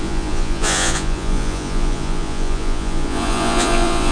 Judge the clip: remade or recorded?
remade